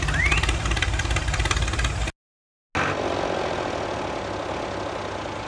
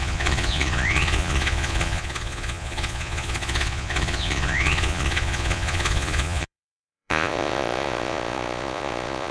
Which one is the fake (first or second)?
second